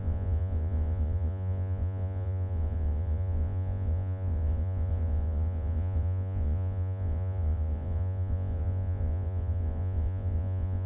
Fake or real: fake